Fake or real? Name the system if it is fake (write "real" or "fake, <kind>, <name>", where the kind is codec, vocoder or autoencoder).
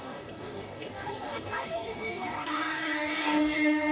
fake, codec, DAC